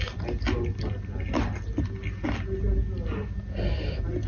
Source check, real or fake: real